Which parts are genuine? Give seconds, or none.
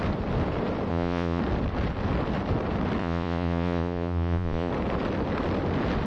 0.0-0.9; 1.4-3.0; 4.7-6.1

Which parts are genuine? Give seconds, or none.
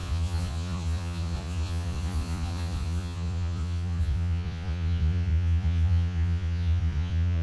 none